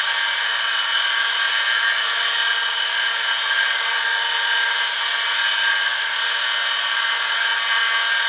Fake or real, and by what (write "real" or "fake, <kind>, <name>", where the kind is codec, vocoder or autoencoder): real